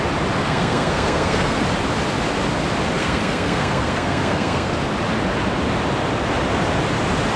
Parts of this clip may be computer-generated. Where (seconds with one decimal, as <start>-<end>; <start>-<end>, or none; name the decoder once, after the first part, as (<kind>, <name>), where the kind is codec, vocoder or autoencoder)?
0.4-1.6 (codec, SNAC); 3.0-4.7